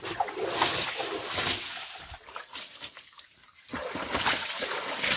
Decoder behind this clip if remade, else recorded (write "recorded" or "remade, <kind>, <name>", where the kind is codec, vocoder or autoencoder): recorded